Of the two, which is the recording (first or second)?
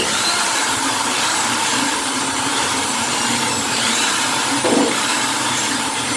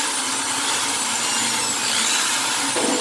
second